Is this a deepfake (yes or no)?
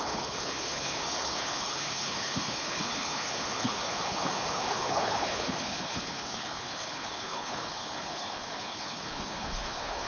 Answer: yes